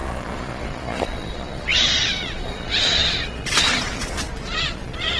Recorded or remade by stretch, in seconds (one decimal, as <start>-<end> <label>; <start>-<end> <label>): 0.0-5.2 remade